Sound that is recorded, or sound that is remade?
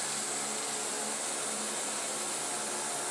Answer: recorded